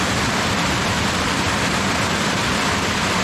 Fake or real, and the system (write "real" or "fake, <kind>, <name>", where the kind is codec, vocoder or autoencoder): real